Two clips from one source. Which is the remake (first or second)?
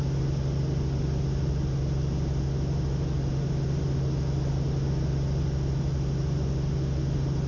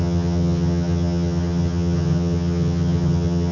second